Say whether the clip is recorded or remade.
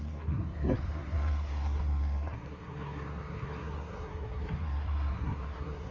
remade